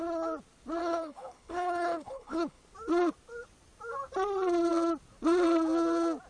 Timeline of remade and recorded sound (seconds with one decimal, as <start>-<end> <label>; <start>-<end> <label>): 0.0-0.8 recorded; 0.8-2.6 remade; 2.6-6.3 recorded